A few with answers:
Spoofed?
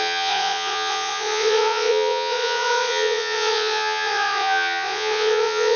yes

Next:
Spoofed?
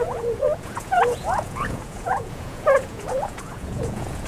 yes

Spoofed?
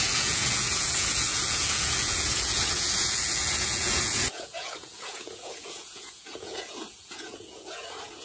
yes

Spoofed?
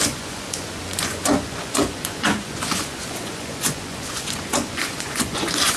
yes